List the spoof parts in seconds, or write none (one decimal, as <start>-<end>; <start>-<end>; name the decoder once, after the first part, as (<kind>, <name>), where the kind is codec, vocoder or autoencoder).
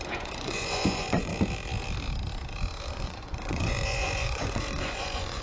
0.0-1.3 (vocoder, Vocos); 2.9-5.4